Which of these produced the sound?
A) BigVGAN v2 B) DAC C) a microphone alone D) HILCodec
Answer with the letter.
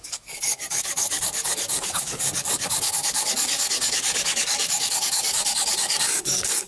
B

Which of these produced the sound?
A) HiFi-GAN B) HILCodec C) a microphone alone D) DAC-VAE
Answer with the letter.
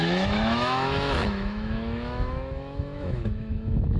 D